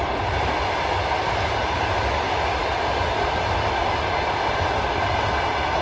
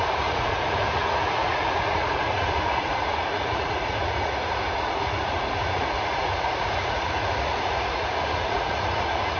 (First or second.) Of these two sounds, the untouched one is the first